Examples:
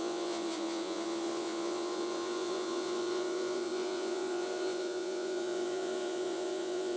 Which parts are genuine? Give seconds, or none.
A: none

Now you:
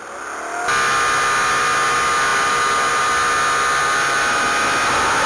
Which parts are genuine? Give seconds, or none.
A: 0.0-5.3

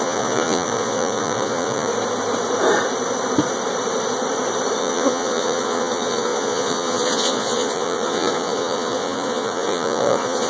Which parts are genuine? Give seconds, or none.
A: 1.9-4.8

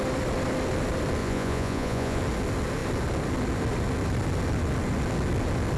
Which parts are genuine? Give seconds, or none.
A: 0.0-1.2; 2.2-5.8

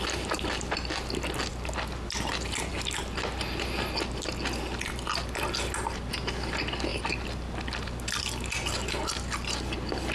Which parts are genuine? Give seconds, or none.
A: 0.0-10.1

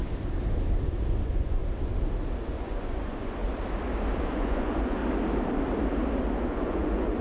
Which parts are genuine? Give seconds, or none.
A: 0.0-1.2; 1.6-2.5; 3.4-4.2; 5.0-6.2